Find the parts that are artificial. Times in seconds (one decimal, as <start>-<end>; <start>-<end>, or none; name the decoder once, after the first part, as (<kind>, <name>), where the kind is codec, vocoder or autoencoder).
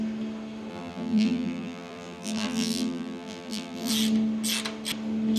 0.7-3.9 (vocoder, BigVGAN v2)